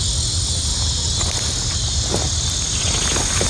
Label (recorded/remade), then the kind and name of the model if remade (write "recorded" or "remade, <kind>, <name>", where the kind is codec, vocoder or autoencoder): recorded